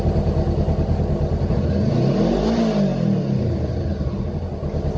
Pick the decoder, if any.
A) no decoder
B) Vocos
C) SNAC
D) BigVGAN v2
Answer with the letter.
A